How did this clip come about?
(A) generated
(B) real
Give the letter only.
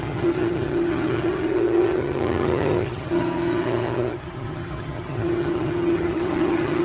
A